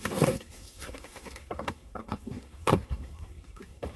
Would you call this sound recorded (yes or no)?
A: no